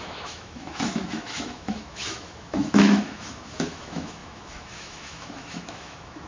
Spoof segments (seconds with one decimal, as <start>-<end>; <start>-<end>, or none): 0.0-6.3